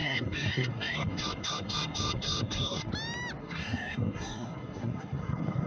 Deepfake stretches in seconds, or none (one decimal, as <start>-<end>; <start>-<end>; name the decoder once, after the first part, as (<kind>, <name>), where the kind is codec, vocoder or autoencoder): 0.0-2.9 (codec, SNAC); 3.4-5.7